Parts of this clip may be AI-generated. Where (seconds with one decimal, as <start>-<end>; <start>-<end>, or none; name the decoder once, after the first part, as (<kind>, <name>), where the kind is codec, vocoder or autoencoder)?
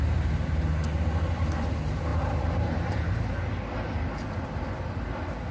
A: 2.1-3.2 (vocoder, BigVGAN v2)